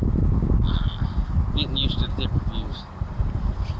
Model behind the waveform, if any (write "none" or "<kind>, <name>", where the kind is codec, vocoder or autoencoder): none